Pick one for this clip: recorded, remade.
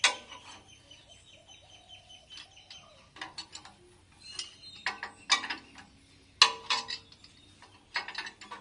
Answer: recorded